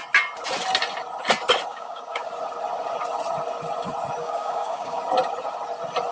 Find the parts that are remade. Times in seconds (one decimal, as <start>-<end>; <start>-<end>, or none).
1.7-2.3; 4.2-5.0